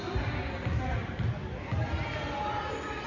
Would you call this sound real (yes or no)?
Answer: yes